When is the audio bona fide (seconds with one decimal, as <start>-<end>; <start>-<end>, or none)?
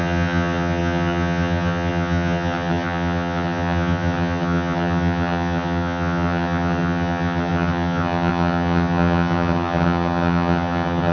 none